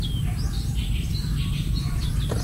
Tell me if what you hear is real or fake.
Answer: real